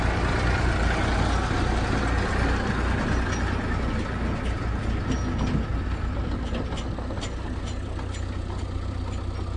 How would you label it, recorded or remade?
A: recorded